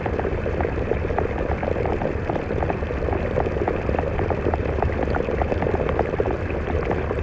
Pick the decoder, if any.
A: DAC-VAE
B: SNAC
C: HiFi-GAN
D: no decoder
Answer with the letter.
D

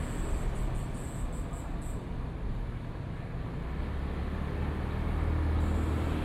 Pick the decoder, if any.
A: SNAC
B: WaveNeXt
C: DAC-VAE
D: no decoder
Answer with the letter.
D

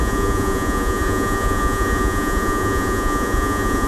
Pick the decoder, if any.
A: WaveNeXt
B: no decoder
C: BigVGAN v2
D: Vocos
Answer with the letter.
D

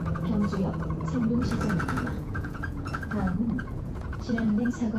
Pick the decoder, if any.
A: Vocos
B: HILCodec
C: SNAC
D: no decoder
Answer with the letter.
A